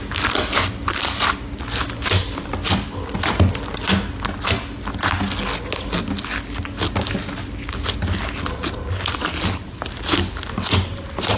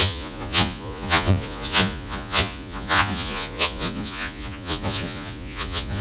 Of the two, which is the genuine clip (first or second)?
first